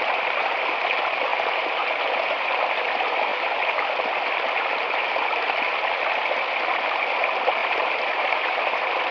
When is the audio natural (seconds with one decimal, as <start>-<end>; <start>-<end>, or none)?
0.0-1.3; 2.5-7.6